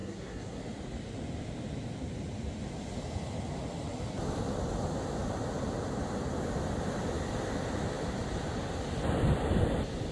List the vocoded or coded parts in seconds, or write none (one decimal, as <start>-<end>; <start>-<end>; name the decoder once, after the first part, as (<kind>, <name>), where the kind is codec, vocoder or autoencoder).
0.0-0.6 (codec, SNAC)